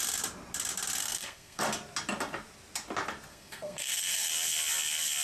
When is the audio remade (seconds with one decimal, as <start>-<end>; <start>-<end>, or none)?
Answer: 1.0-1.6; 3.3-4.3